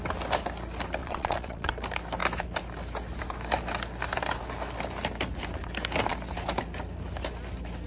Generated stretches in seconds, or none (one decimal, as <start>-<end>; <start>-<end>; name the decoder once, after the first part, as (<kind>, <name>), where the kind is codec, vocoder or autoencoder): 1.0-1.7 (vocoder, Vocos)